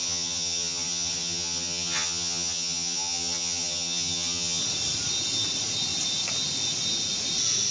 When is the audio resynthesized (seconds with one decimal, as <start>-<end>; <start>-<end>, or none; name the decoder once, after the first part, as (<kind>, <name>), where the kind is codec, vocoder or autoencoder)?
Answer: 0.0-4.6 (vocoder, HiFi-GAN)